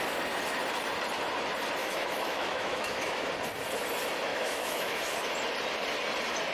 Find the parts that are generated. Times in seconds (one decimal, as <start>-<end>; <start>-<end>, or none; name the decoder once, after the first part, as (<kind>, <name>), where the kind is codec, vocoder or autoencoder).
1.8-3.3 (autoencoder, DAC-VAE); 4.3-5.3